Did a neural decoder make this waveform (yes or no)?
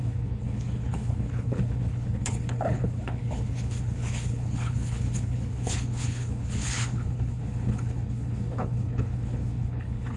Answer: yes